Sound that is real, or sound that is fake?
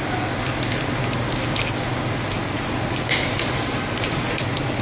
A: real